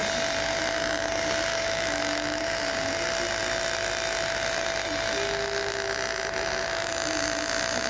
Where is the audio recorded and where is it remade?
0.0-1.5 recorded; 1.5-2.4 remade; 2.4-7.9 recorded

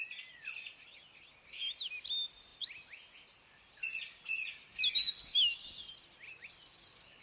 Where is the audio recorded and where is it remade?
0.0-7.2 recorded

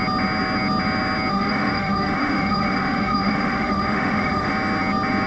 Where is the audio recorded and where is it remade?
0.0-1.3 recorded; 1.3-4.5 remade; 4.5-5.3 recorded

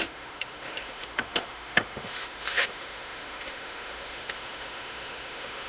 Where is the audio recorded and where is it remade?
0.0-5.7 remade

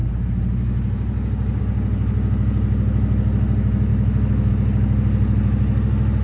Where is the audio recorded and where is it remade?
0.0-3.9 recorded; 3.9-4.5 remade; 4.5-6.2 recorded